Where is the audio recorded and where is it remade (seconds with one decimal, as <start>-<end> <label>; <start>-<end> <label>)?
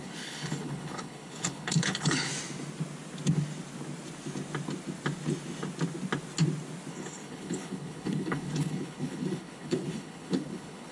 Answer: 0.0-2.3 remade; 2.3-6.9 recorded; 6.9-10.9 remade